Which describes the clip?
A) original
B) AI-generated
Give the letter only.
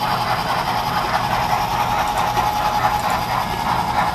A